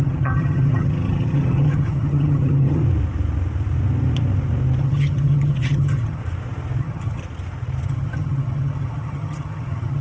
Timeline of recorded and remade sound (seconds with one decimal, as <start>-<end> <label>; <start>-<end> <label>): 0.0-2.8 remade; 2.8-4.8 recorded; 4.8-6.2 remade; 6.2-6.8 recorded; 6.8-7.2 remade; 7.2-7.9 recorded; 7.9-10.0 remade